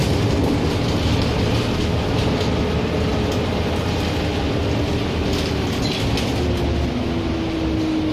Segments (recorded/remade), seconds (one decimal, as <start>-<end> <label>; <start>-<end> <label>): 0.0-8.1 recorded